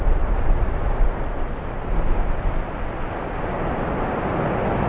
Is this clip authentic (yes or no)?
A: yes